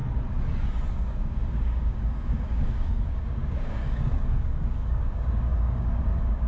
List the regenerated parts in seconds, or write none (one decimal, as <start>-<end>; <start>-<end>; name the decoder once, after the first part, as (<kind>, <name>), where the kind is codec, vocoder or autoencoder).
0.9-6.5 (codec, DAC)